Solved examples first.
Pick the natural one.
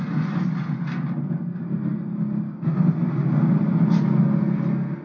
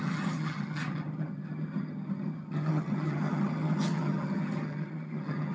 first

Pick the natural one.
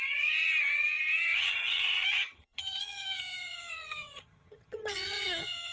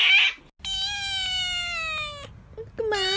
second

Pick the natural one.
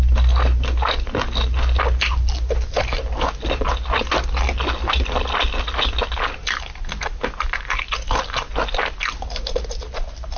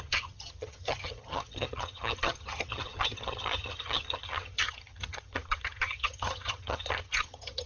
first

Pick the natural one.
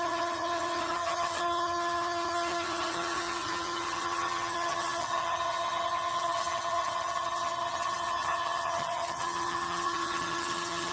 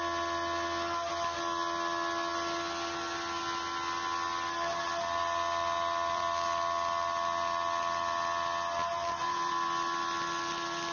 second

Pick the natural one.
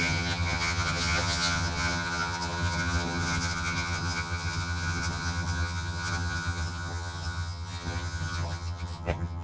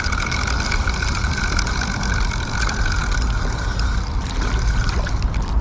second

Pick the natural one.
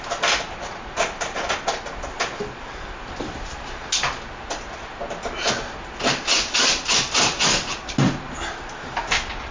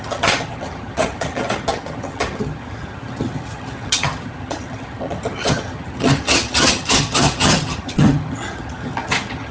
first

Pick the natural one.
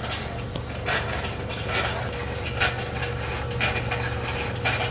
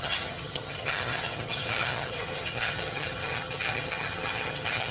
first